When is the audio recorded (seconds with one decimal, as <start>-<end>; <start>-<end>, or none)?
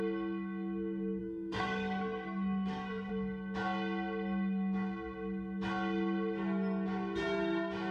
0.0-1.2; 3.1-7.9